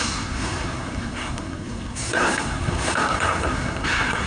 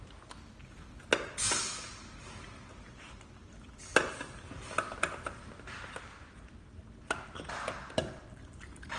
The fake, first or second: first